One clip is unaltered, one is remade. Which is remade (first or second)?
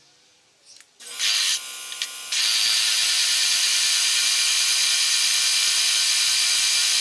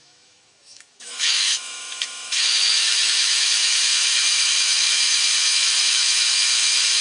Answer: second